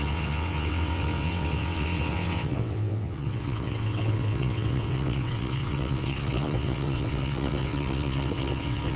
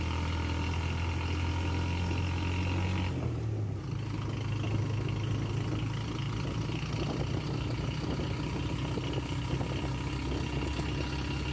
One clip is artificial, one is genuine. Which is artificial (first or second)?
first